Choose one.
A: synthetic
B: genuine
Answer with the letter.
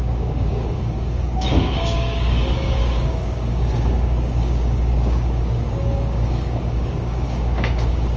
A